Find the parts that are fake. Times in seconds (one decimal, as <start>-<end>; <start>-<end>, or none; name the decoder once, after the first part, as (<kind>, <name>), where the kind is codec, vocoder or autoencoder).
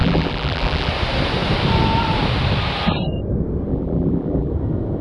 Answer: 0.0-0.9 (vocoder, BigVGAN v2); 3.7-4.5